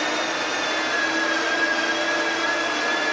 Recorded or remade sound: recorded